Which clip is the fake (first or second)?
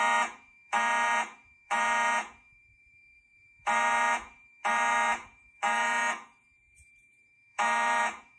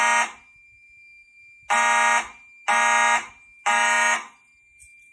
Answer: first